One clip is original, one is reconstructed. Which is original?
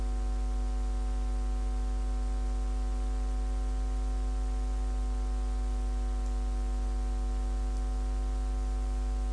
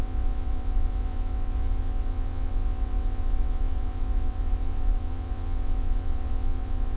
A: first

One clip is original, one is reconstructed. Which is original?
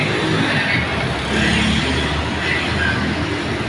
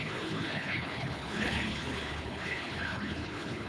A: first